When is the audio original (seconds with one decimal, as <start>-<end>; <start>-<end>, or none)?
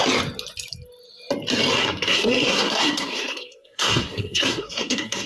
0.0-1.8